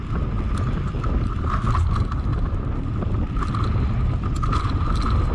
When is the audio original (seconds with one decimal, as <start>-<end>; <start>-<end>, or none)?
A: 0.0-5.3